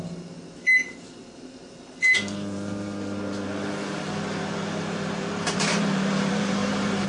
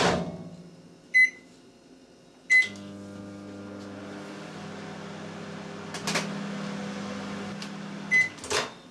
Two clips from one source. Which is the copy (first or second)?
first